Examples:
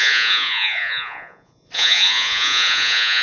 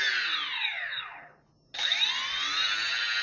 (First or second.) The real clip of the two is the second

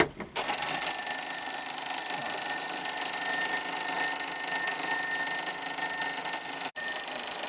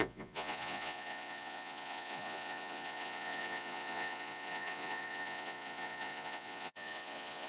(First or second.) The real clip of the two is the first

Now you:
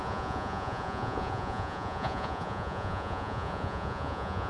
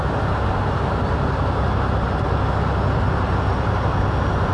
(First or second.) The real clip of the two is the second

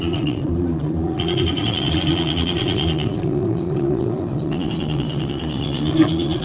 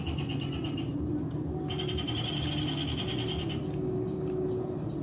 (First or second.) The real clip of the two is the second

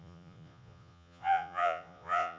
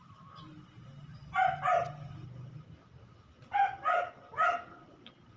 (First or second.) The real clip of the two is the second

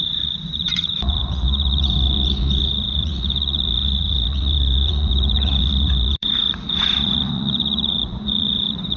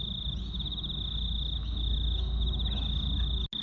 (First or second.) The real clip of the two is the second